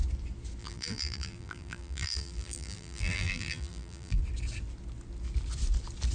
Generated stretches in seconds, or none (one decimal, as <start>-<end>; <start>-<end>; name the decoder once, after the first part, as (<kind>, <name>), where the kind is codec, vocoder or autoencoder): 0.6-4.2 (vocoder, BigVGAN v2)